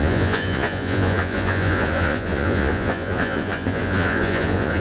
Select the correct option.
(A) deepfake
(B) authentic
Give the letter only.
A